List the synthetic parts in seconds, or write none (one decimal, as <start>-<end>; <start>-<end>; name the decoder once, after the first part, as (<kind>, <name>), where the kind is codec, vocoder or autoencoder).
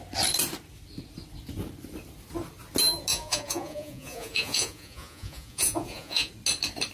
3.1-6.3 (vocoder, Vocos)